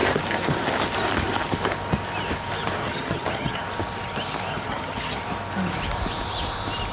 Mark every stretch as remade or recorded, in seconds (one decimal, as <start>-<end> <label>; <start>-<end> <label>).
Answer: 0.0-2.8 recorded; 2.8-3.6 remade; 3.6-4.5 recorded; 4.5-5.2 remade; 5.2-6.9 recorded